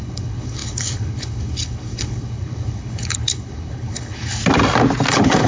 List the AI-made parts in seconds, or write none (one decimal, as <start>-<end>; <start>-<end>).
0.0-4.4; 5.1-5.5